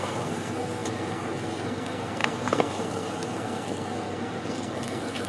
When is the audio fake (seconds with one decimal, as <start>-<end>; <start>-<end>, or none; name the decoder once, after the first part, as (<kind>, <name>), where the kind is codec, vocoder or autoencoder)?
0.0-5.3 (codec, SNAC)